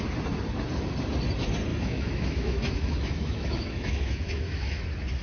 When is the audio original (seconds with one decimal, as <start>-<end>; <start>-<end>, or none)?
0.0-1.7; 4.8-5.2